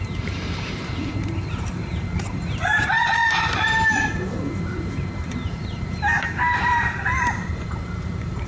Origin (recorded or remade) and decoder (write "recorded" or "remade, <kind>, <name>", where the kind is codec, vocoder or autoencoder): remade, vocoder, BigVGAN v2